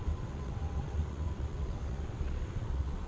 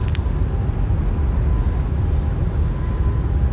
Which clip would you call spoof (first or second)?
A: first